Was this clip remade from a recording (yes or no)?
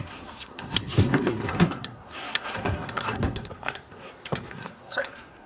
yes